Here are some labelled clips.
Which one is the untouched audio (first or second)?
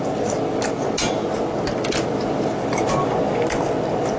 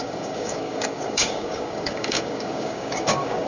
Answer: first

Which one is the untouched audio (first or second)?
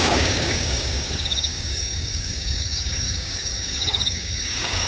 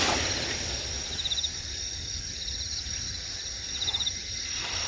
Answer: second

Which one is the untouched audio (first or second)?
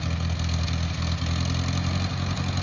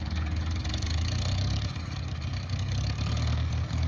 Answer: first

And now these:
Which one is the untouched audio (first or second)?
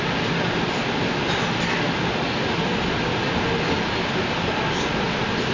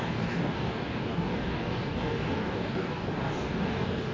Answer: first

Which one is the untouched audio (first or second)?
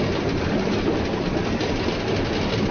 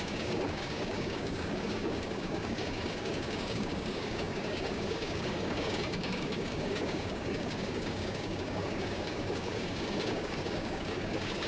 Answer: first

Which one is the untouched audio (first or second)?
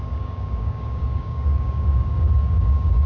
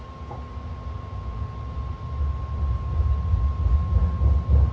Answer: second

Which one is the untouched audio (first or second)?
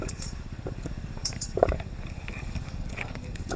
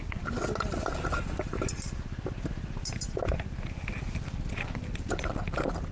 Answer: second